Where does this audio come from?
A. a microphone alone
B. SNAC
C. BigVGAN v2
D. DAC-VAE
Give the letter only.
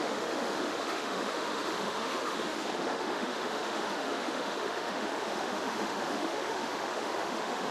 D